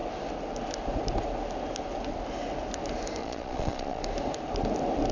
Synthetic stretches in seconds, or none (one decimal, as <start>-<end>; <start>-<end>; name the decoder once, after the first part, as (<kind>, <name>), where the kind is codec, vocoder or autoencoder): 3.2-4.0 (vocoder, Vocos)